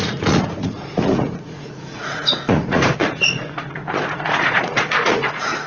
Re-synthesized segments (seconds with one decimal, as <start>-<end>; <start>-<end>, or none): 0.0-5.7